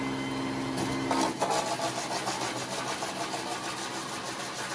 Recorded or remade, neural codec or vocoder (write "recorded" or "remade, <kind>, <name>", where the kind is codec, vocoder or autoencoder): recorded